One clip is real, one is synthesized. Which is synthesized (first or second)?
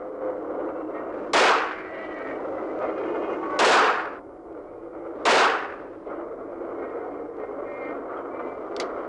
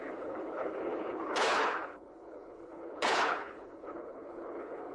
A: second